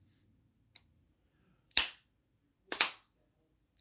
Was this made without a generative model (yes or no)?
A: no